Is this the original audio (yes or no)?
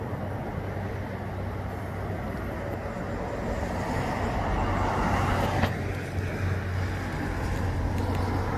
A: yes